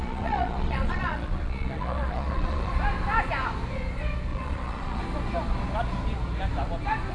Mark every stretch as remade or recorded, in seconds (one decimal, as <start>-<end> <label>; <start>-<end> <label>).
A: 0.0-2.7 remade; 2.7-4.3 recorded; 4.3-5.0 remade; 5.0-7.1 recorded